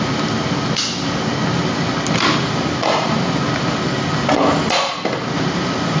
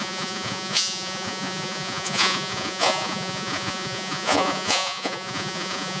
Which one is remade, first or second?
second